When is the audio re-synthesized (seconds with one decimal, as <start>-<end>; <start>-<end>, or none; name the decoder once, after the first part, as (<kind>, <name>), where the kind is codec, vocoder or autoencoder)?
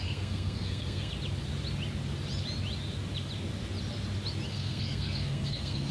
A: 0.0-1.1 (codec, SNAC); 4.5-5.9